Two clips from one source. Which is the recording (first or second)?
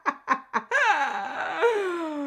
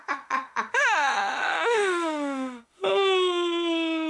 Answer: first